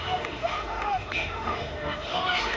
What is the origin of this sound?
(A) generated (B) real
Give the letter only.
A